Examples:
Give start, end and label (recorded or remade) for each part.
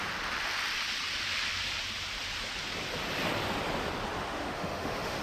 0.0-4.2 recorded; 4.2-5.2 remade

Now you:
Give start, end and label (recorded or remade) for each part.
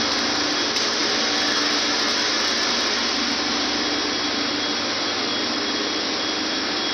0.0-6.9 recorded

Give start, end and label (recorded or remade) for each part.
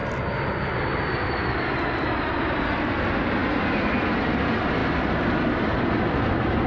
0.0-6.7 recorded